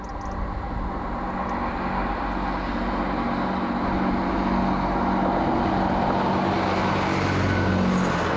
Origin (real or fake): real